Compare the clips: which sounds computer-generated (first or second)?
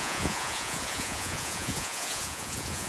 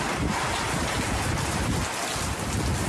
first